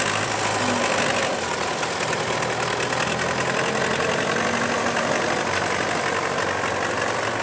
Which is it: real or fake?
real